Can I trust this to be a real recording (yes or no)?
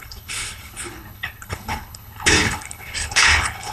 no